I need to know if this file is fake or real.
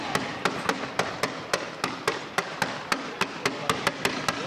real